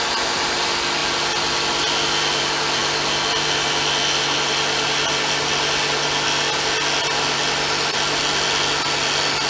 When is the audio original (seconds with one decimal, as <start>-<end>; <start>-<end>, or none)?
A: 0.0-9.5